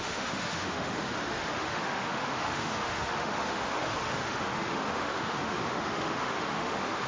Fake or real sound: fake